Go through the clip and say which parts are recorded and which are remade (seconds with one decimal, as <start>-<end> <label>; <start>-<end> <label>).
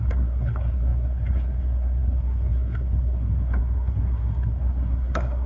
0.0-5.5 remade